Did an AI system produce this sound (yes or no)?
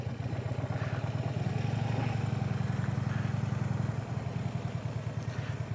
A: no